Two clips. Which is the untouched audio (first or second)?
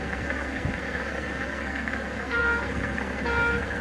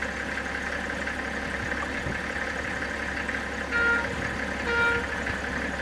second